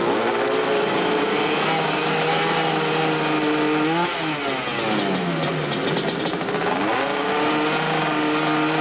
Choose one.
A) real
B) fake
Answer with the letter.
A